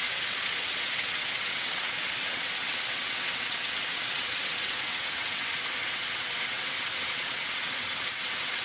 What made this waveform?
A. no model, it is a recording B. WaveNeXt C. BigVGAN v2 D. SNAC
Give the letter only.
B